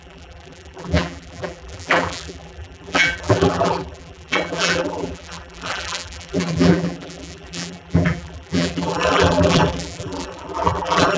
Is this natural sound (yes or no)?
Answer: no